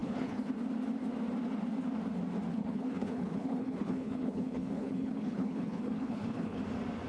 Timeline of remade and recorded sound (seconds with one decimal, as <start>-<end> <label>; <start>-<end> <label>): 0.0-0.5 remade; 0.5-2.5 recorded; 2.5-6.6 remade; 6.6-7.1 recorded